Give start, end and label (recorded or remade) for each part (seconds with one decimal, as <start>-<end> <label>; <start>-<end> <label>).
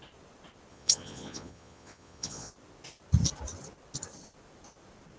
0.0-0.7 recorded; 0.7-2.5 remade; 2.5-5.2 recorded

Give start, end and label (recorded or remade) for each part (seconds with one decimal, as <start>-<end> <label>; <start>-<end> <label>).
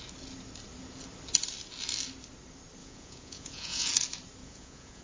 0.0-2.8 recorded; 2.8-3.9 remade; 3.9-4.4 recorded; 4.4-5.0 remade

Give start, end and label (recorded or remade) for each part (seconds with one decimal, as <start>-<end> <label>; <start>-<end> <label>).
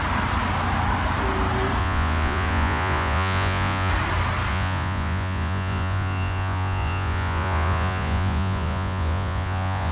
0.0-1.8 recorded; 1.8-3.9 remade; 3.9-4.5 recorded; 4.5-9.9 remade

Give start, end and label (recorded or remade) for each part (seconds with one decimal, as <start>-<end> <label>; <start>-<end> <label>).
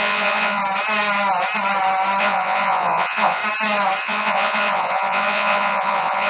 0.0-0.6 remade; 0.6-2.2 recorded; 2.2-3.4 remade; 3.4-4.0 recorded; 4.0-6.3 remade